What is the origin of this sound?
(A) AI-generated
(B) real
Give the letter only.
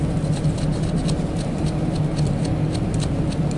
B